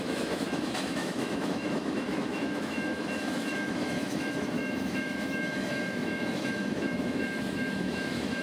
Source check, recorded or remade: remade